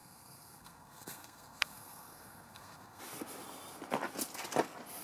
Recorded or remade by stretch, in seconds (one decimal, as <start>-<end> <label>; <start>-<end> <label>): 0.0-3.0 remade; 3.0-5.0 recorded

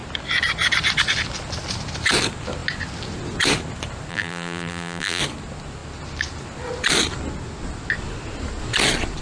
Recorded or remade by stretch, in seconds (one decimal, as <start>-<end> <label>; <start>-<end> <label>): 0.0-4.1 recorded; 4.1-5.2 remade; 5.2-9.2 recorded

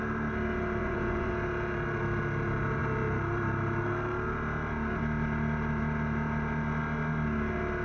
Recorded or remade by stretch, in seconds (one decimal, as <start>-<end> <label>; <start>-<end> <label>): 0.0-0.8 recorded; 0.8-1.3 remade; 1.3-7.8 recorded

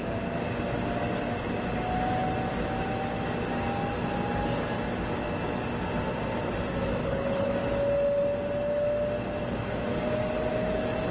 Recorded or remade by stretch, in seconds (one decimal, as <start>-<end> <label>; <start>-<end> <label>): 0.0-7.0 recorded; 7.0-7.5 remade; 7.5-11.1 recorded

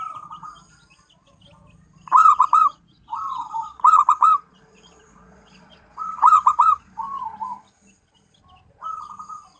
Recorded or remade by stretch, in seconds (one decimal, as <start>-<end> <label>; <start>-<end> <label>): 0.0-2.2 recorded; 2.2-7.2 remade; 7.2-9.6 recorded

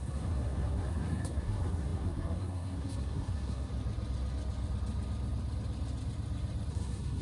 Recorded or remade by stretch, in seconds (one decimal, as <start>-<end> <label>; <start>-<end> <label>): 0.0-3.7 remade; 3.7-6.7 recorded; 6.7-7.2 remade

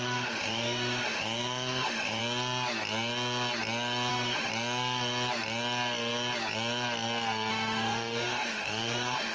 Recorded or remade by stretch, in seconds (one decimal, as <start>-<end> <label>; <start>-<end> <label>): 0.0-2.2 remade; 2.2-4.1 recorded; 4.1-4.5 remade; 4.5-7.5 recorded; 7.5-9.3 remade